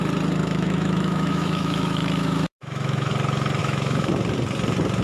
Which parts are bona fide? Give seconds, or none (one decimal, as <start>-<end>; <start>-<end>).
0.0-0.4; 3.1-3.6; 4.1-5.0